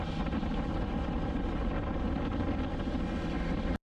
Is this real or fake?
real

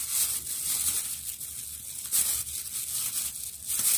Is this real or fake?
real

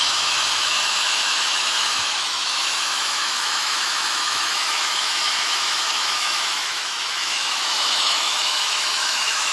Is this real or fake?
fake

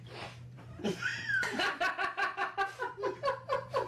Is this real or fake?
fake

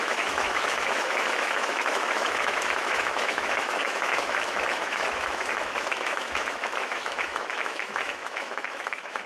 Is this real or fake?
fake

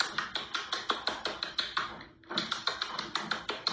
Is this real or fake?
real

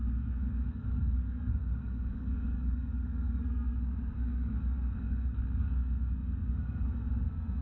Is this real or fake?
fake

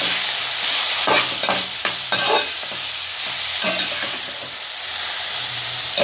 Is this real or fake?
real